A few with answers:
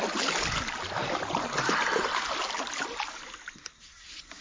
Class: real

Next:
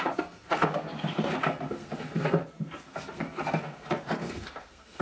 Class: fake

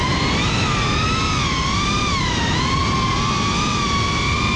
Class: real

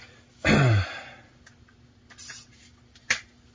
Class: real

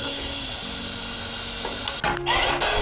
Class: real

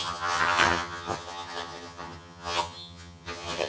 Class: fake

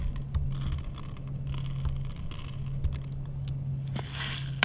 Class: real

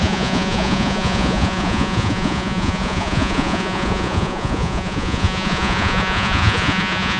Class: fake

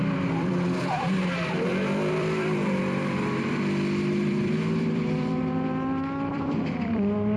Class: fake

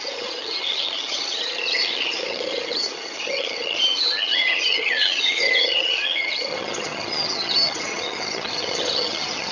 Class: fake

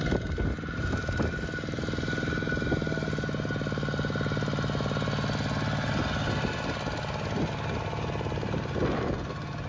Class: real